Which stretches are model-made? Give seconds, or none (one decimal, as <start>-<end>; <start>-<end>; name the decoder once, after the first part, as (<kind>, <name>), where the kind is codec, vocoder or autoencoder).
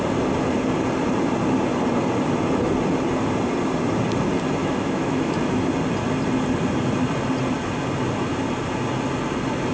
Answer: 4.6-5.7 (autoencoder, DAC-VAE)